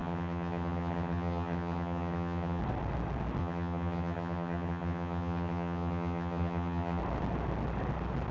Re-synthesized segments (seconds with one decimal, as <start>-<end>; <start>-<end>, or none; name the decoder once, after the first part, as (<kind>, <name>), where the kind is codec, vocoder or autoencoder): 0.0-2.6 (vocoder, HiFi-GAN); 3.4-7.0

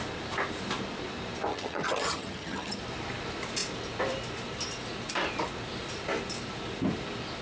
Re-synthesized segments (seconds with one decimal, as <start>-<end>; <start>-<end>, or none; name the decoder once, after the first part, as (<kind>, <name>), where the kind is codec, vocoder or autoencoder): 1.5-2.8 (vocoder, HiFi-GAN)

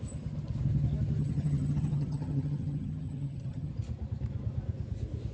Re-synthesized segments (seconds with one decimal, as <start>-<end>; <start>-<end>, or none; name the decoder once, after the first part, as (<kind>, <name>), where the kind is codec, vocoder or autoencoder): 1.2-3.7 (vocoder, HiFi-GAN)

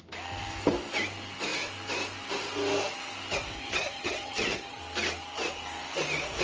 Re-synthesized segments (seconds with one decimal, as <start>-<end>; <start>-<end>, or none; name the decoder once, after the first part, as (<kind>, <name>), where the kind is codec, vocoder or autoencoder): 3.6-4.8 (vocoder, HiFi-GAN)

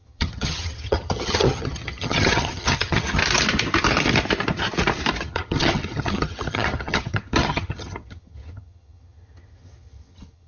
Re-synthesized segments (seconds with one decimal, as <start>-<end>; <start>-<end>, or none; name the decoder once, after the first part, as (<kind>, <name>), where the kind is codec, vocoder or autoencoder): 0.0-3.2 (vocoder, HiFi-GAN); 5.2-10.5

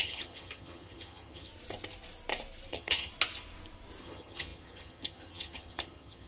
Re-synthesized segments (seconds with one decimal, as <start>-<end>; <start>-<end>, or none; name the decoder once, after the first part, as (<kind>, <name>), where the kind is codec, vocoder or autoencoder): 0.0-1.5 (vocoder, HiFi-GAN); 2.7-3.1; 4.0-6.3

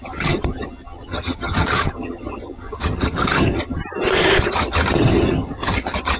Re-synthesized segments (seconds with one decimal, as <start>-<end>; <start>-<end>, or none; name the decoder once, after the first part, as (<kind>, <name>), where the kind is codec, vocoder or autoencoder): 0.0-3.8 (vocoder, HiFi-GAN); 4.4-6.2

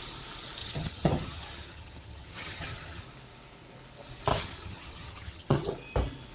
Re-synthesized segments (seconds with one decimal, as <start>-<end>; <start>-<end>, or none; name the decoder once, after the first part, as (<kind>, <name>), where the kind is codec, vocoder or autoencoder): 0.6-3.0 (vocoder, HiFi-GAN); 4.3-5.7